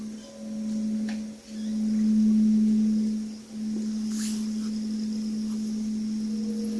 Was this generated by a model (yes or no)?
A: no